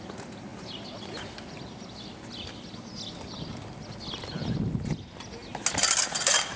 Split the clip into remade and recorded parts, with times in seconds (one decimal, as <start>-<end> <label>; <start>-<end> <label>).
0.0-6.6 recorded